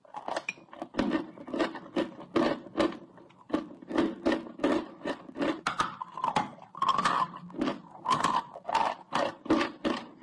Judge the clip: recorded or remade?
recorded